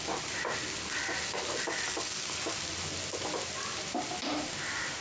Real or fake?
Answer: real